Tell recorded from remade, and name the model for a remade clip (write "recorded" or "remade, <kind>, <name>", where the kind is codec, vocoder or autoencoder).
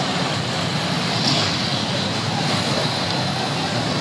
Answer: recorded